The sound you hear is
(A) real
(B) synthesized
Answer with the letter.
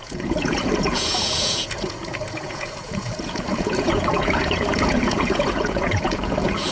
B